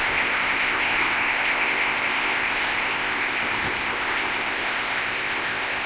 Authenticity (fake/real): fake